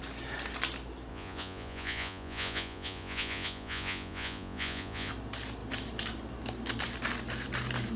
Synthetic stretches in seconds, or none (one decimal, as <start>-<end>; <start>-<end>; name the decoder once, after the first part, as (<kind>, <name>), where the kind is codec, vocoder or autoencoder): 1.1-5.1 (vocoder, Vocos)